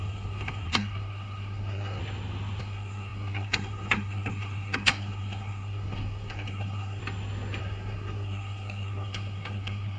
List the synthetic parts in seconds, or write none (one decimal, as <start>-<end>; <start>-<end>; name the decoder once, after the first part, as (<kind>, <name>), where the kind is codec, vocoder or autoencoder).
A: 0.0-2.0 (codec, SNAC); 2.6-7.0; 7.6-10.0